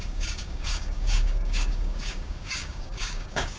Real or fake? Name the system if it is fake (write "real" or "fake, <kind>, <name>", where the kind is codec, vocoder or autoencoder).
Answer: fake, codec, DAC